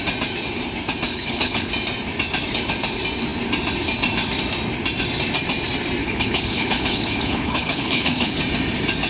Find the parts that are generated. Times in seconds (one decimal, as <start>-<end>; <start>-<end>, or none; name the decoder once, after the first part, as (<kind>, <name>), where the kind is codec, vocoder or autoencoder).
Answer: 1.1-1.7 (codec, HILCodec); 6.0-8.4